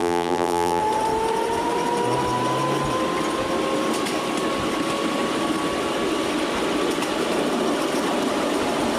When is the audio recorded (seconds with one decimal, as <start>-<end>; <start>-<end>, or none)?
0.8-9.0